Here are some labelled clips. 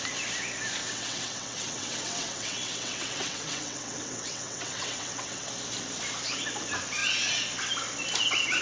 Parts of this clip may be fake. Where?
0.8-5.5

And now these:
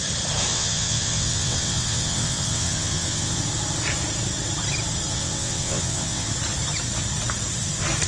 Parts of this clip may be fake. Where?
0.5-3.4; 5.1-6.3